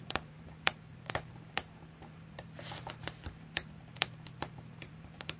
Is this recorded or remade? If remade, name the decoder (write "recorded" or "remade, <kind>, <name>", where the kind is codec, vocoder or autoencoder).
remade, vocoder, BigVGAN v2